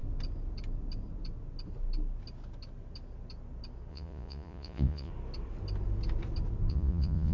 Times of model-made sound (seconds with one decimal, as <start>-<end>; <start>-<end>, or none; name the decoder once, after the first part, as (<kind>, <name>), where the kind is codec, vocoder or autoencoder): 3.9-5.1 (vocoder, Vocos); 6.7-7.3